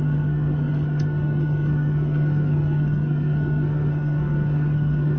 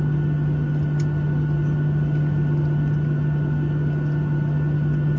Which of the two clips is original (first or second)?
second